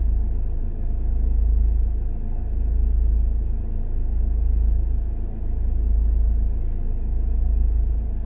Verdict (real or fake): real